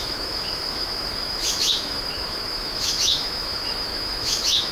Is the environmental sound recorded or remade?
remade